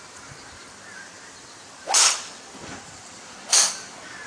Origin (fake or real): fake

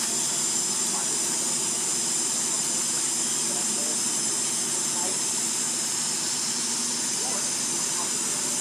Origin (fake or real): real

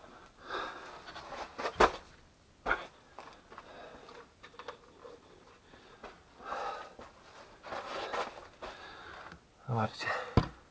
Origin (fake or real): real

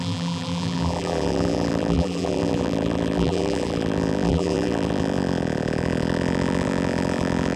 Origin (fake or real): fake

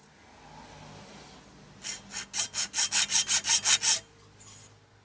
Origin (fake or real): real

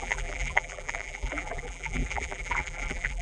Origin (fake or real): fake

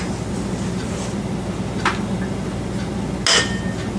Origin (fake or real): real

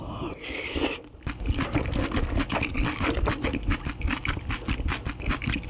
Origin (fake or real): real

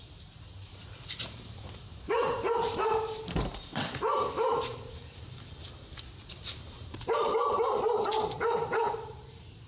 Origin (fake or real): fake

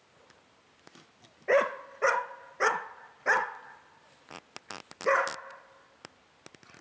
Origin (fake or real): real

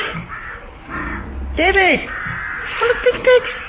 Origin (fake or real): fake